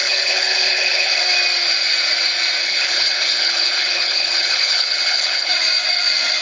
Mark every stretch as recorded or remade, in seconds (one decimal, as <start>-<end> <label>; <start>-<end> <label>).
0.0-1.2 remade; 1.2-2.6 recorded; 2.6-5.5 remade; 5.5-6.4 recorded